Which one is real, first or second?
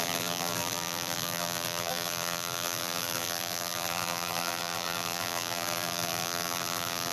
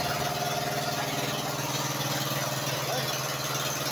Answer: second